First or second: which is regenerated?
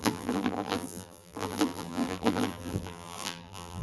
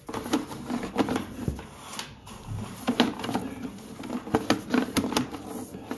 first